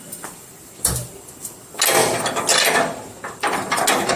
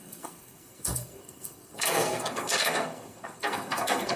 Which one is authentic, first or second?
first